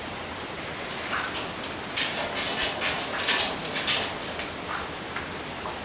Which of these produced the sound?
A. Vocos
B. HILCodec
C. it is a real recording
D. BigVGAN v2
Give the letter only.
D